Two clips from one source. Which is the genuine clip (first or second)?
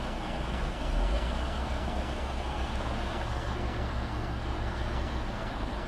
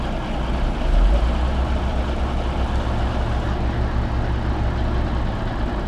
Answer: second